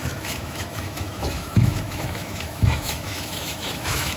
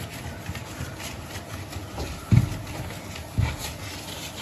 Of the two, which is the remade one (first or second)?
first